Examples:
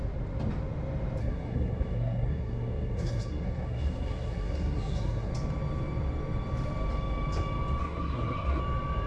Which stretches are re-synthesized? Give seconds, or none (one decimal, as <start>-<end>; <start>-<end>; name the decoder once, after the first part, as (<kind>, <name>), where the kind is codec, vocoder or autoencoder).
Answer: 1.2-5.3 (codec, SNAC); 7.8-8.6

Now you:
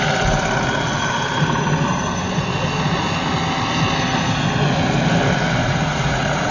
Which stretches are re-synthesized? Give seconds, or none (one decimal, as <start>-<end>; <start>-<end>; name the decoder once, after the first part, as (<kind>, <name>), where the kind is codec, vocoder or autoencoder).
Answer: 5.6-6.5 (vocoder, Vocos)

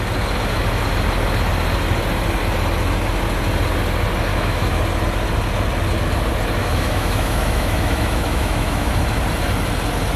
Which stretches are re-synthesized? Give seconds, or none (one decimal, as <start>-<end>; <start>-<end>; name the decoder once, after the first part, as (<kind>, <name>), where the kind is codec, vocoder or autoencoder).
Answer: 4.3-4.8 (autoencoder, DAC-VAE); 6.6-8.9